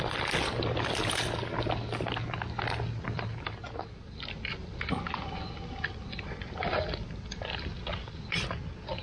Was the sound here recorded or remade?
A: recorded